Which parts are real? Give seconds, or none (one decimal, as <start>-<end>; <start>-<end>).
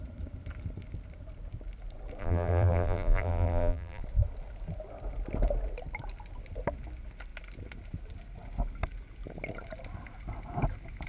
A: 0.0-2.2; 4.0-11.1